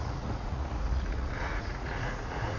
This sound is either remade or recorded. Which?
remade